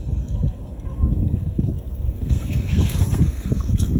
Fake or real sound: fake